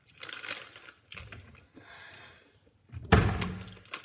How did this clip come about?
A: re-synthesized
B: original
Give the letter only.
B